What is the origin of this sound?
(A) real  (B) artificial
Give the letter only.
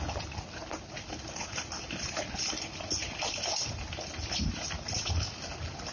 A